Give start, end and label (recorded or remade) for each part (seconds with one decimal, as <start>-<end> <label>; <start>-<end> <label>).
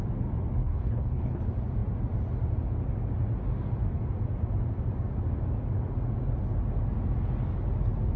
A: 0.0-0.6 recorded; 0.6-1.4 remade; 1.4-8.2 recorded